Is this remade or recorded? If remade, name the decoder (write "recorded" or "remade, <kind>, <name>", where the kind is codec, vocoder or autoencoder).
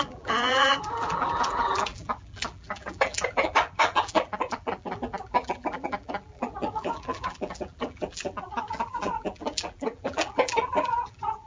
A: remade, vocoder, BigVGAN v2